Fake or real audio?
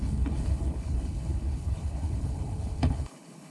fake